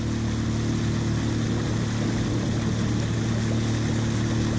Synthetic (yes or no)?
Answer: no